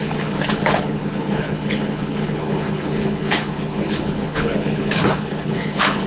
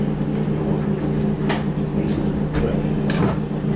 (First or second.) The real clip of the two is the second